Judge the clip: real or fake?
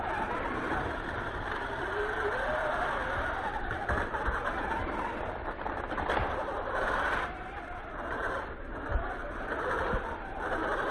real